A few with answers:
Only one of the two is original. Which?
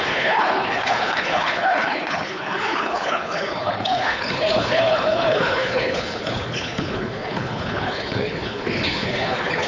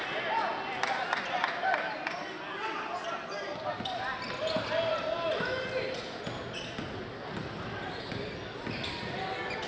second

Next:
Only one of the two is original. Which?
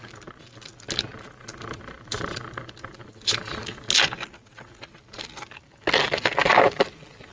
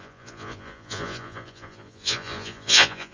first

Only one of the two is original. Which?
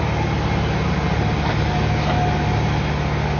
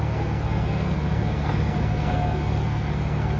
first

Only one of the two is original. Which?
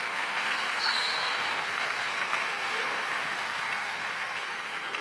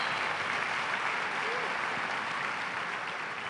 second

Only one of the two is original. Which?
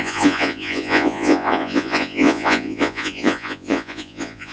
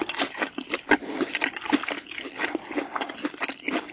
second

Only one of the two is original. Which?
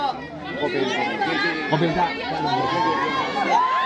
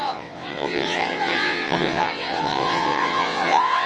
first